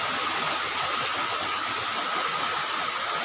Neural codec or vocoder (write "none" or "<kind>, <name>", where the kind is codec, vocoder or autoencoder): none